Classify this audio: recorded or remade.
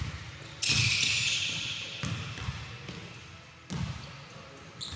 recorded